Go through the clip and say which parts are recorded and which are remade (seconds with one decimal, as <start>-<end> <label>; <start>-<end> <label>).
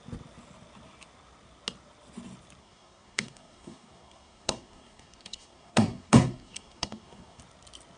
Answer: 0.0-2.6 recorded; 2.6-7.4 remade; 7.4-8.0 recorded